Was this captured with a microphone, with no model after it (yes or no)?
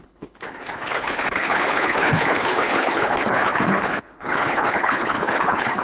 no